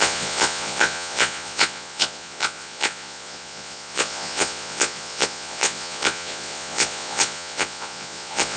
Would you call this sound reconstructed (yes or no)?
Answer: yes